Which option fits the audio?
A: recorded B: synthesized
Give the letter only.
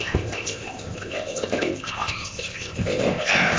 B